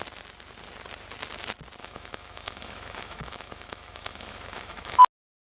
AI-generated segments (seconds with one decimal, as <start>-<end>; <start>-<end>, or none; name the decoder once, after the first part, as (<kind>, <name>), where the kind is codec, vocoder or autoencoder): 1.8-5.0 (autoencoder, DAC-VAE)